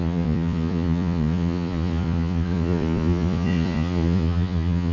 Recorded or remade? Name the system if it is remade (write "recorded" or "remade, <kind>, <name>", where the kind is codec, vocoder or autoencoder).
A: remade, vocoder, Vocos